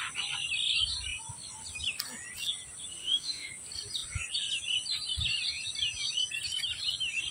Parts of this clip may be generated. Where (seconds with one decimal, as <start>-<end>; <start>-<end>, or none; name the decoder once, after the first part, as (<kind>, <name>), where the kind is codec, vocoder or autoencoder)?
3.0-3.5 (autoencoder, DAC-VAE)